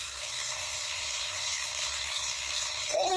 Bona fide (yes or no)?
no